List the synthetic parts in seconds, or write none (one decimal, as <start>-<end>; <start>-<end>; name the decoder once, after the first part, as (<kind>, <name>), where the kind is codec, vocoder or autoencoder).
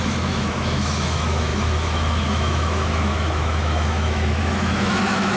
0.0-5.4 (autoencoder, DAC-VAE)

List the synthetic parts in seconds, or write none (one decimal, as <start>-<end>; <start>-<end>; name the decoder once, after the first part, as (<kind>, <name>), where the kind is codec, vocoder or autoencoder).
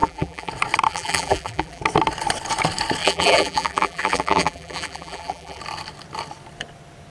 0.0-0.5 (vocoder, BigVGAN v2); 0.9-1.8; 3.0-5.6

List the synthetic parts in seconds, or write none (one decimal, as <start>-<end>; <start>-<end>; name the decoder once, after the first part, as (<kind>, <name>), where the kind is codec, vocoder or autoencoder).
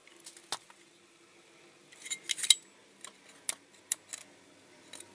none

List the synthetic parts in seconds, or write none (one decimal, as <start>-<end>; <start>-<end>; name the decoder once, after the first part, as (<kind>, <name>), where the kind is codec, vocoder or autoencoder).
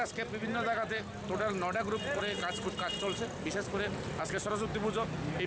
none